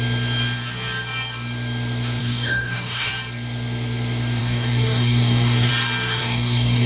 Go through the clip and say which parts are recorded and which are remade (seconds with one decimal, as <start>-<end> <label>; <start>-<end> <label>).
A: 0.0-2.2 recorded; 2.2-3.1 remade; 3.1-4.4 recorded; 4.4-5.7 remade; 5.7-6.2 recorded; 6.2-6.9 remade

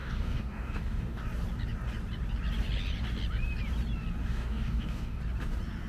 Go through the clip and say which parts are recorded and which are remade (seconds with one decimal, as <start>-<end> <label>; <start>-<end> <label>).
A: 0.0-1.2 remade; 1.2-4.2 recorded; 4.2-5.2 remade; 5.2-5.9 recorded

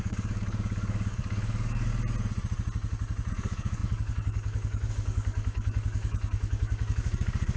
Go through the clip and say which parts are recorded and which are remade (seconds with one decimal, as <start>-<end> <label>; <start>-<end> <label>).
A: 0.0-1.9 remade; 1.9-3.3 recorded; 3.3-7.6 remade

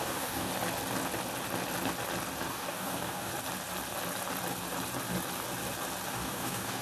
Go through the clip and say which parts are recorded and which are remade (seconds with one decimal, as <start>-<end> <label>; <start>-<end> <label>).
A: 0.0-0.5 remade; 0.5-2.5 recorded; 2.5-3.3 remade; 3.3-6.1 recorded; 6.1-6.8 remade

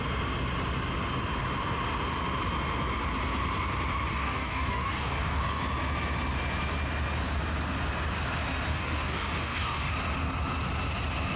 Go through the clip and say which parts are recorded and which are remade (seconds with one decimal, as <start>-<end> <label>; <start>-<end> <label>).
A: 0.0-4.1 recorded; 4.1-5.6 remade; 5.6-8.7 recorded; 8.7-9.9 remade; 9.9-11.4 recorded

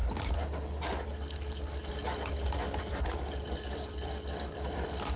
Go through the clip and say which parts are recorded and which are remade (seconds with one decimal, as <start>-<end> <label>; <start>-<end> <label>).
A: 0.0-5.2 recorded